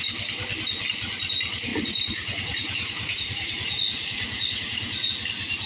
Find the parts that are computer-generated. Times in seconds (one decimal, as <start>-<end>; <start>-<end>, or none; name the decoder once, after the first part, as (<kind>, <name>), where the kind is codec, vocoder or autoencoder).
1.7-5.1 (vocoder, Vocos)